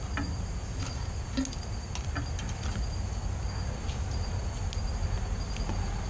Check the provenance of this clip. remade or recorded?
recorded